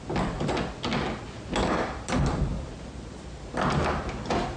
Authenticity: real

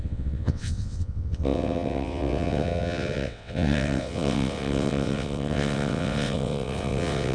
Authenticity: fake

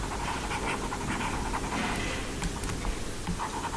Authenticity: real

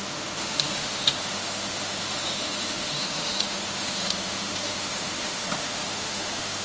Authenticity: fake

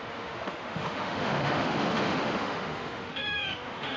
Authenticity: fake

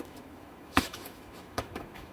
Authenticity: fake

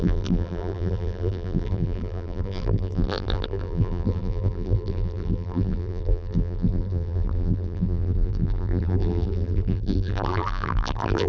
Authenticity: fake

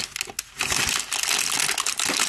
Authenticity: real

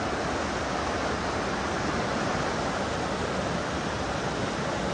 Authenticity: real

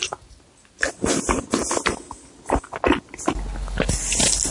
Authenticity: real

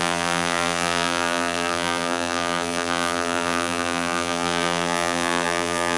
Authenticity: fake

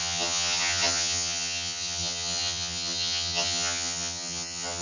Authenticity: fake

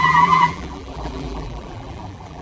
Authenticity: fake